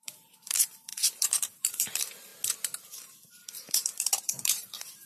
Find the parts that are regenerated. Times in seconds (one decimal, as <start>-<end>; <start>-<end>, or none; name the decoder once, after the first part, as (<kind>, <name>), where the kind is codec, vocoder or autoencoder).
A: 0.0-2.3 (vocoder, BigVGAN v2); 2.8-5.1